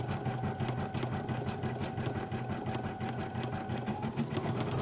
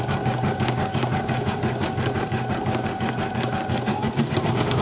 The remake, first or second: second